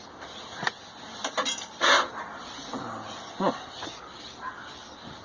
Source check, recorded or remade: recorded